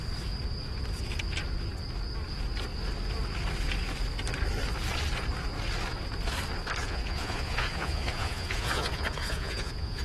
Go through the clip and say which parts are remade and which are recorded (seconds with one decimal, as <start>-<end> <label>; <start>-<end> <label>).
0.0-6.8 recorded; 6.8-10.0 remade